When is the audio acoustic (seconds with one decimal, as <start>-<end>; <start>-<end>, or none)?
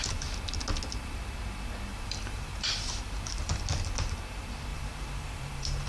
0.0-1.9; 3.6-4.7